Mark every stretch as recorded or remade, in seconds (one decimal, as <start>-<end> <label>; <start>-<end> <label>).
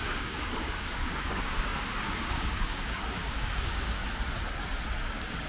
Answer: 0.0-4.0 remade; 4.0-5.1 recorded; 5.1-5.5 remade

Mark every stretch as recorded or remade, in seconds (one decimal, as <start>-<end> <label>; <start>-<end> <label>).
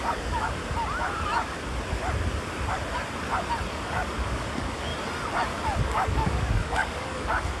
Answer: 0.0-0.6 remade; 0.6-3.7 recorded; 3.7-4.9 remade; 4.9-5.8 recorded; 5.8-7.6 remade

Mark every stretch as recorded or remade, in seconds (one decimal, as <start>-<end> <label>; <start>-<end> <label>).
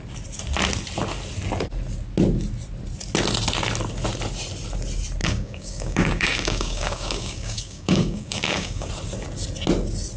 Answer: 0.0-5.2 recorded; 5.2-8.9 remade; 8.9-10.2 recorded